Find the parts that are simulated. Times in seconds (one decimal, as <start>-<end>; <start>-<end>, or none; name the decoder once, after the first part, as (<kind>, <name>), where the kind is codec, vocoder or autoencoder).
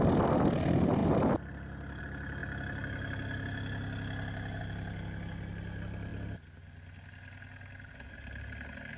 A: none